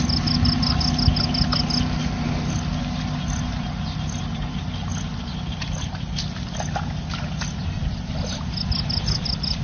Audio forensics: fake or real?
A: real